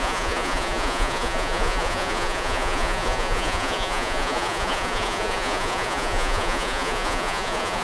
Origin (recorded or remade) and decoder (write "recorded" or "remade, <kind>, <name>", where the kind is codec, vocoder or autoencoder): remade, vocoder, Vocos